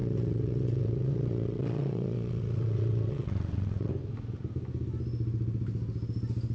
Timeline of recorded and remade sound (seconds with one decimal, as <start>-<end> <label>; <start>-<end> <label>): 0.0-3.9 remade; 3.9-6.5 recorded